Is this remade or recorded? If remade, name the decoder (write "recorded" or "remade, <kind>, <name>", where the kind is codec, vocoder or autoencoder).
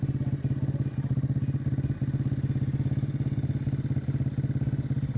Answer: recorded